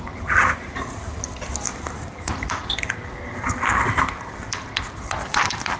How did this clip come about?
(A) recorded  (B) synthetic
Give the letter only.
B